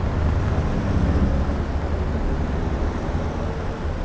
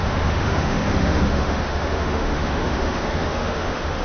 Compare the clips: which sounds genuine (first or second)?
first